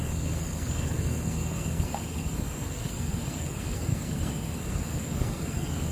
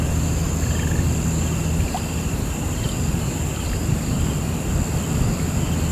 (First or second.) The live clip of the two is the second